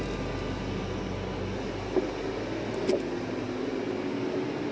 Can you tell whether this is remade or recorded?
recorded